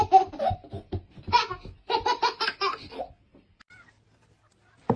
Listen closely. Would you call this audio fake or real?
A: real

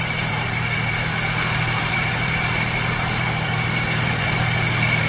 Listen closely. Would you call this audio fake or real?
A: fake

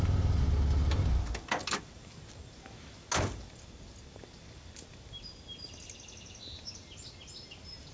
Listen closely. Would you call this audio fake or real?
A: real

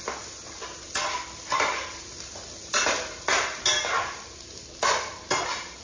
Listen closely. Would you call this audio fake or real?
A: real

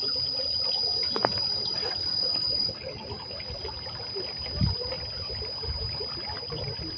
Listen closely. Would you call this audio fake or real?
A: real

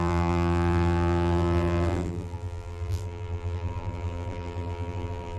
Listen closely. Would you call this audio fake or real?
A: fake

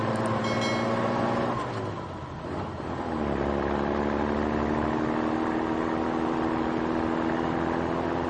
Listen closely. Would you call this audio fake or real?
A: real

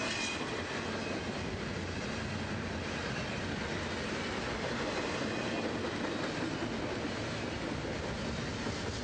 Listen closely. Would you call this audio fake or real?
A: real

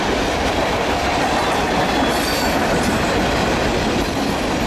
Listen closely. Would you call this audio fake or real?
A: real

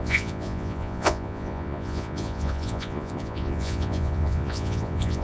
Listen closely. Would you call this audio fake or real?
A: fake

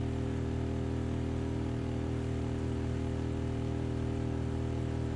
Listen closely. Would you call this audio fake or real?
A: real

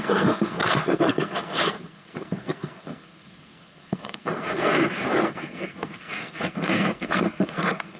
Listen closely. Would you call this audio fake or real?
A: fake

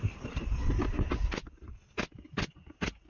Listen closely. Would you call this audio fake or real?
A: real